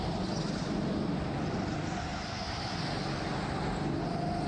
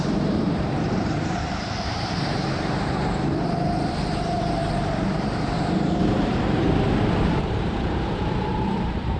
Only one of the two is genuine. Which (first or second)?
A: first